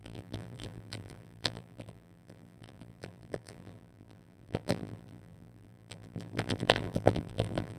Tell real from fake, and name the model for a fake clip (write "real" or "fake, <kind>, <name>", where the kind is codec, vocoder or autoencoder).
fake, vocoder, BigVGAN v2